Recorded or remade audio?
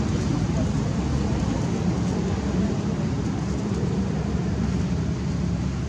recorded